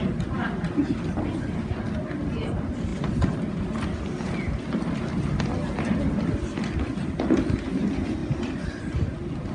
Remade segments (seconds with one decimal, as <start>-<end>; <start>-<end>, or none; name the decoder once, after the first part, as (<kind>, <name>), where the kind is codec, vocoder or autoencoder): none